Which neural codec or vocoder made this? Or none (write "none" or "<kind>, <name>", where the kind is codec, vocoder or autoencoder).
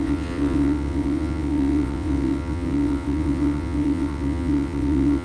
vocoder, WaveNeXt